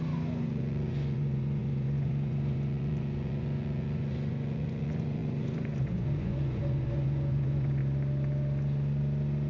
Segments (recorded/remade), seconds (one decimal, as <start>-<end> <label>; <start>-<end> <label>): 0.0-7.8 remade; 7.8-9.5 recorded